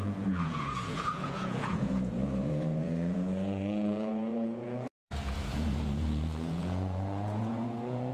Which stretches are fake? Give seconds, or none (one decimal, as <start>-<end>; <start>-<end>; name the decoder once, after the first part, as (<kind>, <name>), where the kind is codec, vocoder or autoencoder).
0.0-8.1 (vocoder, Vocos)